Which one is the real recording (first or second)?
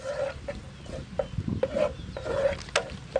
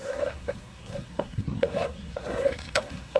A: first